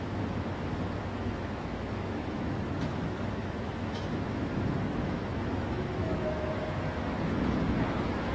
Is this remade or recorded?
remade